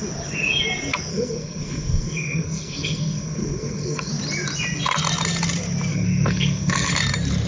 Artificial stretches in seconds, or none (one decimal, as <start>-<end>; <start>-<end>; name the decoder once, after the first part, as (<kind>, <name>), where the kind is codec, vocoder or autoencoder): 1.1-4.1 (codec, SNAC); 5.9-6.9